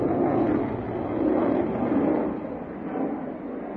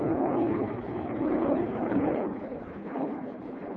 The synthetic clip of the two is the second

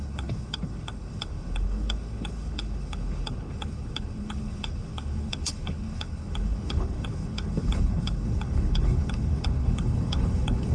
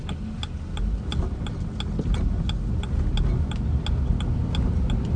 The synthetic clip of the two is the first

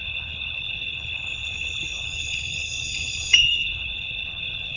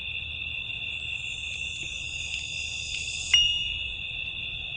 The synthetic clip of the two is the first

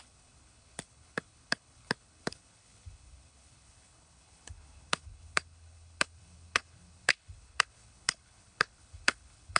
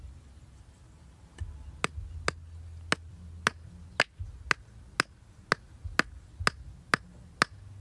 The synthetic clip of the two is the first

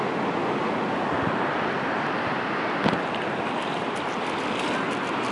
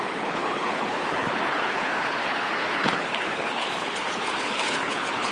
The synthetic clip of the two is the second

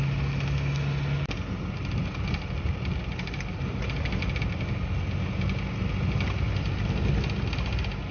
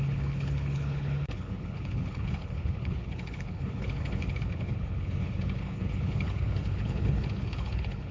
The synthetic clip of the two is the second